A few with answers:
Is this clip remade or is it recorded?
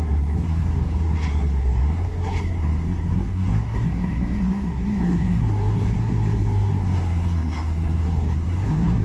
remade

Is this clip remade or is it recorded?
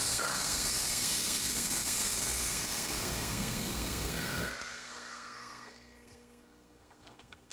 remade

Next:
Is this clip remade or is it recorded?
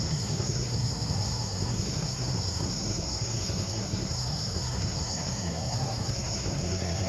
remade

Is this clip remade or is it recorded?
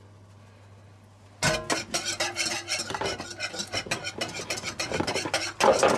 recorded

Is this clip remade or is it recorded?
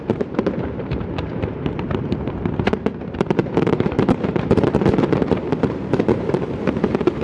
remade